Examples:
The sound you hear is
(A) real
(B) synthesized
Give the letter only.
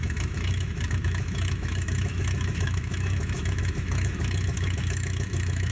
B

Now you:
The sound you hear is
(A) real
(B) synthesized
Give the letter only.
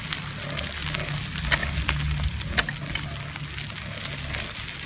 A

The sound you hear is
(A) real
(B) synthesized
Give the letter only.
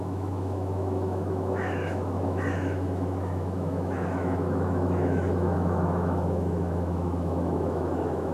B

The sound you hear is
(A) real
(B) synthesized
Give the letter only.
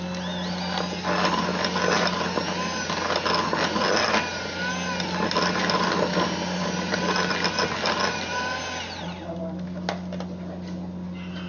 A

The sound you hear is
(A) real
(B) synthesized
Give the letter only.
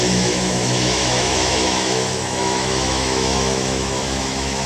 B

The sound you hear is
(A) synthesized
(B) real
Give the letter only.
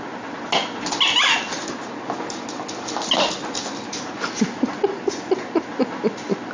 B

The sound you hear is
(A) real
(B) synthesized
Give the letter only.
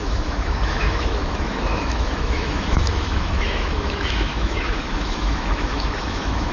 B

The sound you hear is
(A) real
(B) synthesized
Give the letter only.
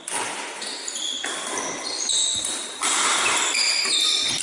A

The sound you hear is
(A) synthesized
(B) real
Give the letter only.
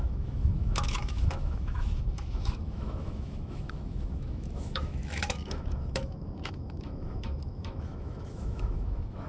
A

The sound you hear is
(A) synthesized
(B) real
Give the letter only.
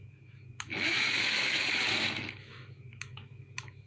A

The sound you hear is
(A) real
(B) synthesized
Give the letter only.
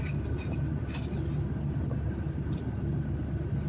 A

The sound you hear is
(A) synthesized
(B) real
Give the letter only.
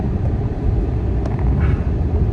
B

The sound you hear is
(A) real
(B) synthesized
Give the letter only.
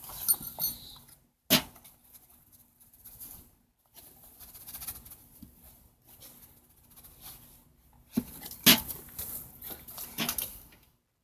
A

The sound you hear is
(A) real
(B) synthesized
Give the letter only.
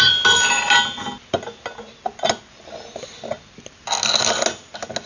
A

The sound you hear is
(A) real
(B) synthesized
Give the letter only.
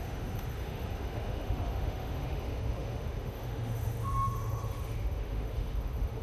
B